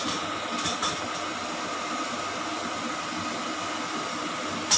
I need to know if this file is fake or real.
real